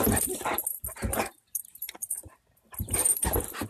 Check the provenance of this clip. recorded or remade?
remade